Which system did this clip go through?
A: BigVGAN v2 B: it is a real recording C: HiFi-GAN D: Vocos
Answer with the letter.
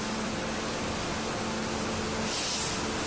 B